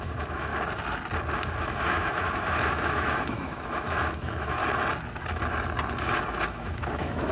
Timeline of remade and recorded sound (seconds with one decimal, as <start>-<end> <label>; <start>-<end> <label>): 0.0-0.5 remade; 0.5-1.6 recorded; 1.6-4.6 remade; 4.6-6.4 recorded; 6.4-7.3 remade